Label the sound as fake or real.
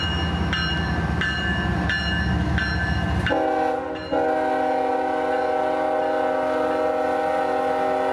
real